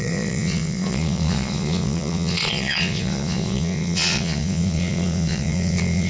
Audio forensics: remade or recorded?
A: remade